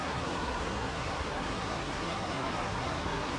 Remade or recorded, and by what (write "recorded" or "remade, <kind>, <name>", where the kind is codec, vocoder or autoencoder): remade, codec, SNAC